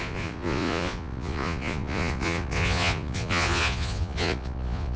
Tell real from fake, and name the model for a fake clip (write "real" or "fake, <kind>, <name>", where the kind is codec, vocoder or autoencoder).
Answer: fake, vocoder, Vocos